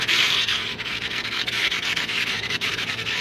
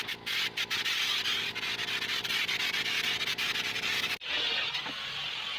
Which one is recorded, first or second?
second